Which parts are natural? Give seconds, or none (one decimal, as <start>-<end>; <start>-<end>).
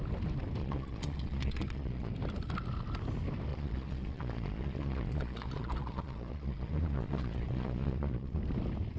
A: 0.0-0.6; 2.1-3.5; 8.4-9.0